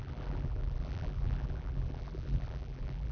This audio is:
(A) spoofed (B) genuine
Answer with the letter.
A